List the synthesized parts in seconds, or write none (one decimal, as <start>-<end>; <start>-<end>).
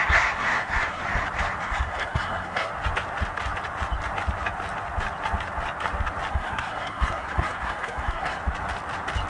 0.0-1.0; 1.6-2.7; 6.3-8.4